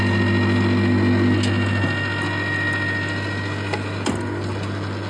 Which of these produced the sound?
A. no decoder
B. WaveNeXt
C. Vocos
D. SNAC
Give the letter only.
A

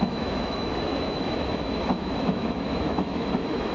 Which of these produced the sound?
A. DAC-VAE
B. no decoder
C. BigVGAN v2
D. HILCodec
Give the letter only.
A